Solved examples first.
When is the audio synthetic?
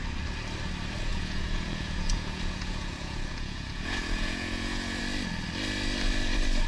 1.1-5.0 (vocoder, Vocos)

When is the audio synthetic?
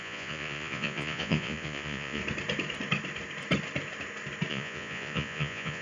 0.0-2.2 (vocoder, Vocos); 4.5-5.8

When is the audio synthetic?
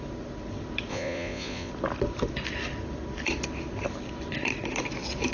0.9-1.7 (vocoder, Vocos)